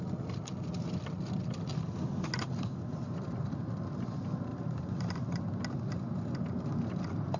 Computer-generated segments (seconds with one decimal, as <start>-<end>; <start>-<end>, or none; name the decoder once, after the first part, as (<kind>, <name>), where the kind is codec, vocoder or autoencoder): 4.5-5.4 (vocoder, BigVGAN v2)